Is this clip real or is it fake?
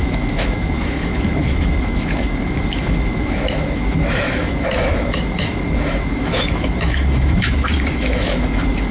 fake